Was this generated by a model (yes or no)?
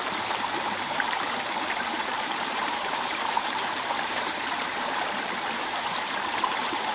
yes